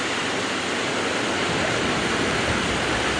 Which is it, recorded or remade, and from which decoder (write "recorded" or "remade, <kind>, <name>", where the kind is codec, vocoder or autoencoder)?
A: recorded